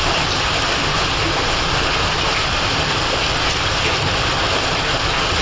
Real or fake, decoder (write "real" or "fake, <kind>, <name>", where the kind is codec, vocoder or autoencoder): real